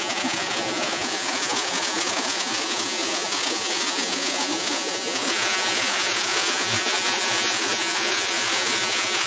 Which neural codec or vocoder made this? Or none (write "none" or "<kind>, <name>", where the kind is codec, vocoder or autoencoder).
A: vocoder, Vocos